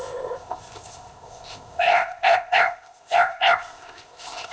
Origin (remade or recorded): remade